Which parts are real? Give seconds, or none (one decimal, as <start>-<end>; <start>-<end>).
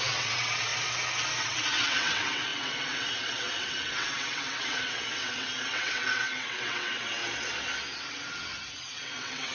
0.7-1.4; 7.2-8.1